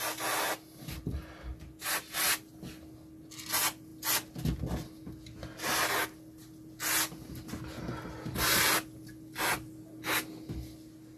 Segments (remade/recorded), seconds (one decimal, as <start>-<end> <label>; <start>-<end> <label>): 0.0-11.2 recorded